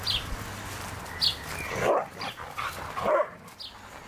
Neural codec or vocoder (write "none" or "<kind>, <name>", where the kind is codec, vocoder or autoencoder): none